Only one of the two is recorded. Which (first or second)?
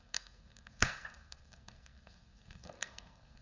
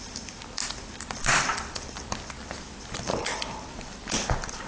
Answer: second